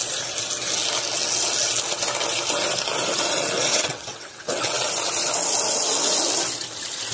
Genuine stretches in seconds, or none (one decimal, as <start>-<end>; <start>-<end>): 0.0-3.7; 4.9-7.1